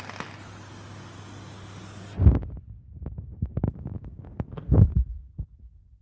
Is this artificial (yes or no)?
no